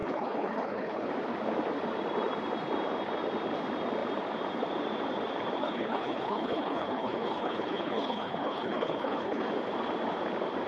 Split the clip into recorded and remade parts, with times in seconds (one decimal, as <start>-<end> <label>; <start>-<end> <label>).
0.0-1.1 remade; 1.1-5.6 recorded; 5.6-9.5 remade; 9.5-10.7 recorded

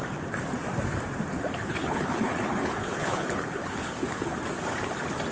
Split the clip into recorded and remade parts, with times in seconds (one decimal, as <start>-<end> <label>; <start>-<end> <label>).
0.0-1.6 recorded; 1.6-4.3 remade; 4.3-5.3 recorded

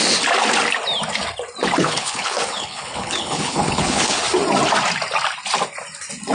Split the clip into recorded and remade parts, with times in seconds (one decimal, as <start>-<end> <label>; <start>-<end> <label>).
0.0-1.8 recorded; 1.8-4.2 remade; 4.2-6.3 recorded

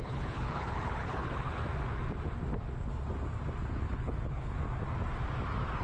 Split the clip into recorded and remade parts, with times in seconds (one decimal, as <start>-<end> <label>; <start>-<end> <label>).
0.0-1.6 remade; 1.6-3.6 recorded; 3.6-4.6 remade; 4.6-5.8 recorded

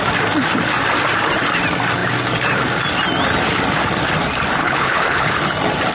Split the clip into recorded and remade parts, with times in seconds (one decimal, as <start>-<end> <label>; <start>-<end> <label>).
0.0-4.6 recorded; 4.6-5.3 remade; 5.3-5.9 recorded

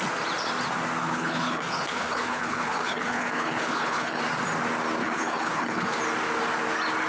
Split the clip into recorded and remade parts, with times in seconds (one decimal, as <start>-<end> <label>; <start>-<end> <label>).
0.0-1.0 recorded; 1.0-4.2 remade; 4.2-5.0 recorded; 5.0-6.0 remade; 6.0-7.1 recorded